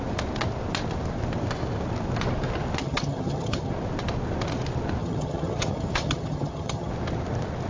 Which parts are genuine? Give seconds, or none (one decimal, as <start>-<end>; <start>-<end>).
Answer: 0.0-2.8; 3.7-5.0; 6.9-7.7